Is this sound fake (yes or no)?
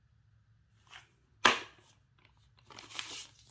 no